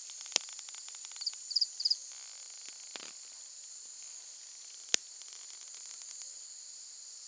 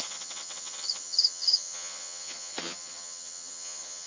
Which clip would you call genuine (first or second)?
first